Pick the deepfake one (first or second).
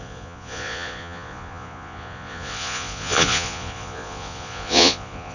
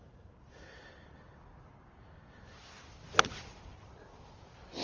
first